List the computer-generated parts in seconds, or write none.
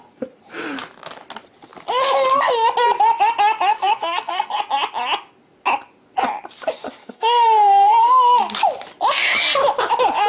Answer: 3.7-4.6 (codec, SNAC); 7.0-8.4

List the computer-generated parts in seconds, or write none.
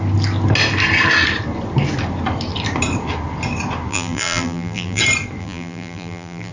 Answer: 3.9-5.0 (vocoder, BigVGAN v2); 5.4-6.5